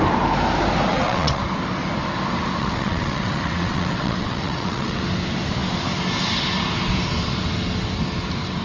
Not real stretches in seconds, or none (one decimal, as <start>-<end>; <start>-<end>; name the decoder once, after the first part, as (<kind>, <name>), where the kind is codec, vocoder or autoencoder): 0.9-1.4 (vocoder, WaveNeXt); 2.6-5.0